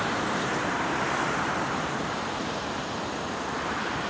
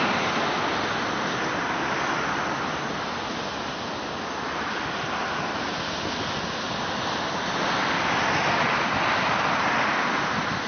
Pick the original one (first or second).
second